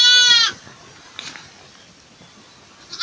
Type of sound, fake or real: real